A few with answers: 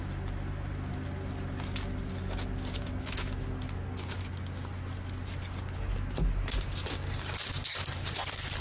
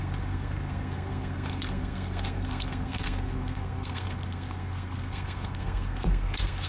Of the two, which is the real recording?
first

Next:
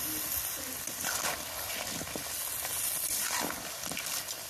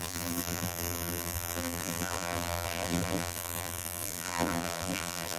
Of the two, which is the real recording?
first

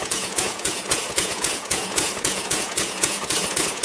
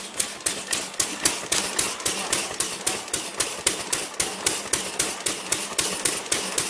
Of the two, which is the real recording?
second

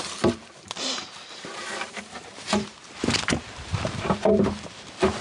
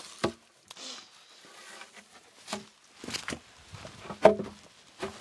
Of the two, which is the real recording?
second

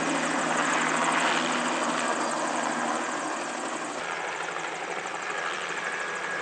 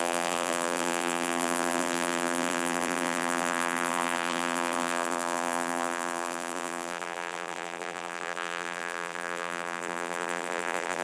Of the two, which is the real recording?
first